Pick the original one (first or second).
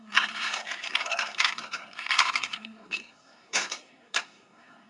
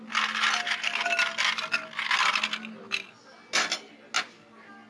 second